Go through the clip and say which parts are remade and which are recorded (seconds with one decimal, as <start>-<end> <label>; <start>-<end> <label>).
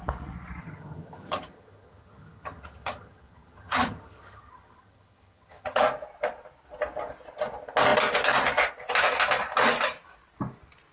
0.0-0.6 recorded; 0.6-5.8 remade; 5.8-10.9 recorded